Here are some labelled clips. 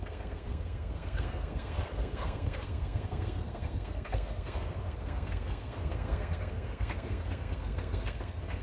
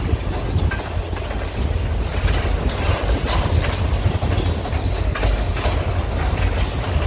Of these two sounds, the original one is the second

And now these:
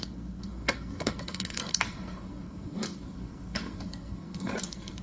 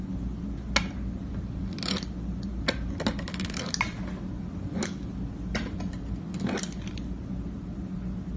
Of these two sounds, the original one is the second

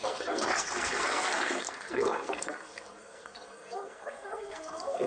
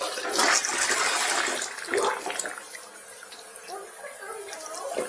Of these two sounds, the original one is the second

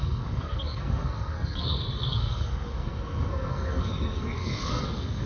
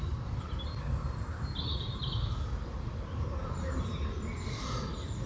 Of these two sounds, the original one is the second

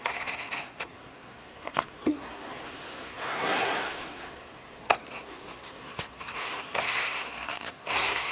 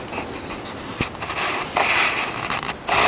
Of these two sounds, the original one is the second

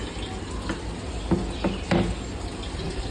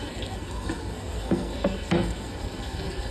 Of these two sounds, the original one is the first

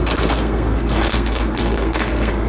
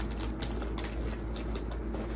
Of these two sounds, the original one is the second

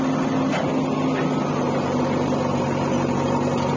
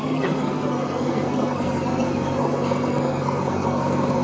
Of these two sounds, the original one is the first